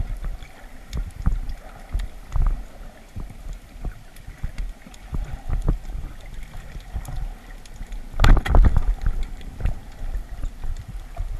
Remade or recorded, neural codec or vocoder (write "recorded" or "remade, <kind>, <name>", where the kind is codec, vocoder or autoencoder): recorded